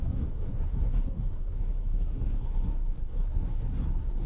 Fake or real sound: fake